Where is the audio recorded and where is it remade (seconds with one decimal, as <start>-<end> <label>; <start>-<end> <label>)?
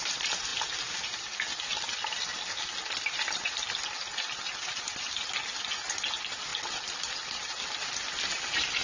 0.0-8.8 recorded